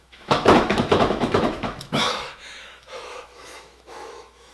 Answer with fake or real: fake